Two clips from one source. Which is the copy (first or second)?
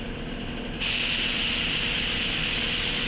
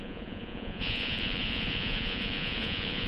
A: second